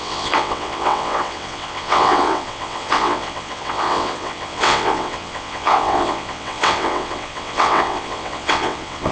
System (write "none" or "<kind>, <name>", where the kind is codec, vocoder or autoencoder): vocoder, WaveNeXt